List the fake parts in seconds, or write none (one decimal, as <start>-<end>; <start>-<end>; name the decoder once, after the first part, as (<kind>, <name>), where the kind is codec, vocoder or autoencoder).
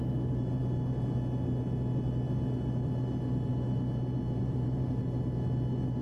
4.4-5.0 (vocoder, BigVGAN v2)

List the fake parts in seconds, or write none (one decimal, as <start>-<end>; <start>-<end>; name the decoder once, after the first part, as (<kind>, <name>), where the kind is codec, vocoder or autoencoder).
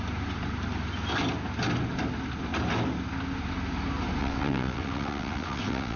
4.2-6.0 (vocoder, WaveNeXt)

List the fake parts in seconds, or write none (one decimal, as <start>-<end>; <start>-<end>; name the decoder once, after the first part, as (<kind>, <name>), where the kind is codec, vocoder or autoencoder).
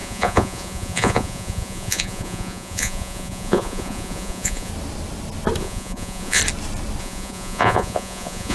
0.0-4.7 (vocoder, Vocos); 5.6-6.4; 7.0-8.5